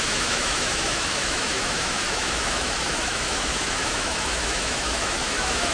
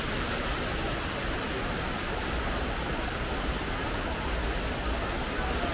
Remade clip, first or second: first